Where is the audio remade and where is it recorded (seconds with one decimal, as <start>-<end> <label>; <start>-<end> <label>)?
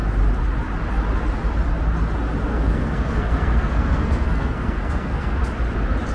0.0-2.5 recorded; 2.5-5.4 remade; 5.4-6.1 recorded